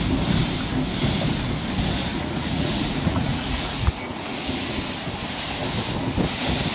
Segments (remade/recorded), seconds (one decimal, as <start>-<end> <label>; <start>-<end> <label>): 0.0-2.1 recorded; 2.1-4.8 remade; 4.8-6.7 recorded